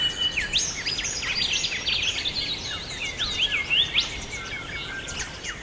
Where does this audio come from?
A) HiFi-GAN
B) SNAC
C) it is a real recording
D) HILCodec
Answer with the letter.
C